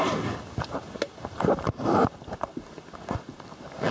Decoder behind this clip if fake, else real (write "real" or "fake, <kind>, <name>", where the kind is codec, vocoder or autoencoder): real